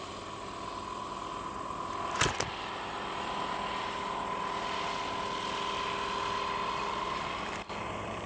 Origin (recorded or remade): recorded